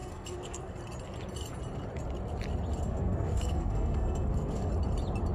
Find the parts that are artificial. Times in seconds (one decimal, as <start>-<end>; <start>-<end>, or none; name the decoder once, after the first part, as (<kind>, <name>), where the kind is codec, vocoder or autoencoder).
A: 0.0-0.8 (codec, SNAC); 2.8-4.7